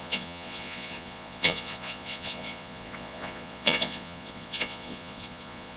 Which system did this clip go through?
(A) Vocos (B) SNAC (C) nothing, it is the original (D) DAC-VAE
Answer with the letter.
A